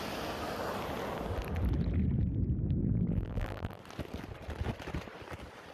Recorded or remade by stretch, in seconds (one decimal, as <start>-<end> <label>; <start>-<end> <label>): 0.0-2.8 recorded; 2.8-3.8 remade; 3.8-5.7 recorded